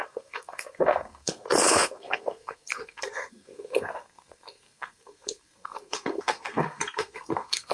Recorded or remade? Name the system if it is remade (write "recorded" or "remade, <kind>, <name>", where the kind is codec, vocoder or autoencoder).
remade, codec, SNAC